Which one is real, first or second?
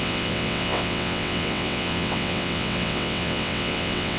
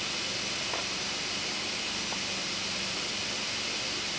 second